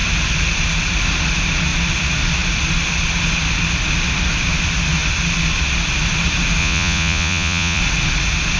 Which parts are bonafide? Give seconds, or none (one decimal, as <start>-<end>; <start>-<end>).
0.0-6.6; 7.8-8.6